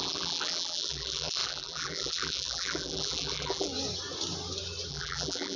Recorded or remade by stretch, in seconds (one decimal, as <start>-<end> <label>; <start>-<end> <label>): 0.0-3.7 remade; 3.7-4.9 recorded; 4.9-5.6 remade